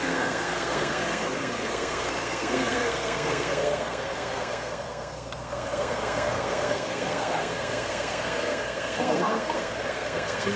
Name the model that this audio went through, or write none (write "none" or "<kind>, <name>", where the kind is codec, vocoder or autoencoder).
codec, SNAC